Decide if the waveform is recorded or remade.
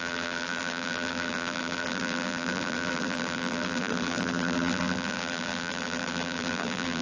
remade